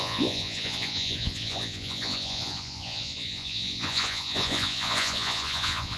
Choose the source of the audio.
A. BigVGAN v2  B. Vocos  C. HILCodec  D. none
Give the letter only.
B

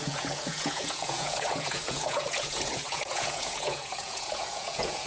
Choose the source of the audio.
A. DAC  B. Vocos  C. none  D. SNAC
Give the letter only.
B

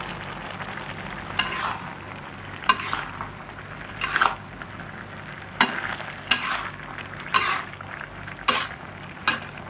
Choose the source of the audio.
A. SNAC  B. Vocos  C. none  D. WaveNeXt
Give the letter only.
C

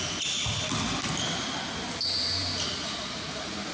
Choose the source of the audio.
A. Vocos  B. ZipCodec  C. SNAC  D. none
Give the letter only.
D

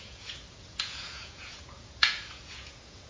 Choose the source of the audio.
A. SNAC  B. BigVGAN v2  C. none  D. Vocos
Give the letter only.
D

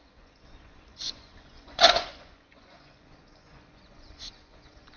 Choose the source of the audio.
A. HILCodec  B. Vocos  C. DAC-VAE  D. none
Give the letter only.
B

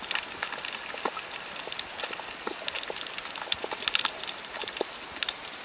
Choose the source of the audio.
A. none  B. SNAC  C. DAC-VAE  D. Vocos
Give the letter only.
A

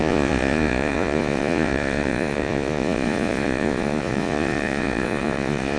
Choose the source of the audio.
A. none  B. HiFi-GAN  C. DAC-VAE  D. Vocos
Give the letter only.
D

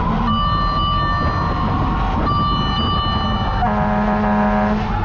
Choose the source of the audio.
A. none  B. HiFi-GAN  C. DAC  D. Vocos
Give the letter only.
A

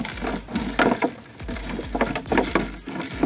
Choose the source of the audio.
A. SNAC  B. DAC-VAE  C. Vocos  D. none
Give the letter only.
D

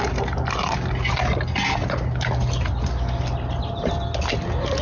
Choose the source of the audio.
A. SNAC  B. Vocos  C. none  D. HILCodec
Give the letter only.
C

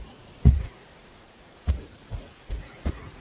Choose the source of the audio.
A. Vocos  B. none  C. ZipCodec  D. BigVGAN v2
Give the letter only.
A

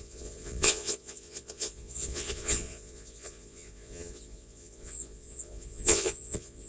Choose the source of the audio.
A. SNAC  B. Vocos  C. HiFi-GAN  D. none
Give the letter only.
B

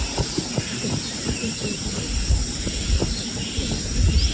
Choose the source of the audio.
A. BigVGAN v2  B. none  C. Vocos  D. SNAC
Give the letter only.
B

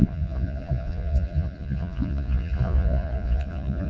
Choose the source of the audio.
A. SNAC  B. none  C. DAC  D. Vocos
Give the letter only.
D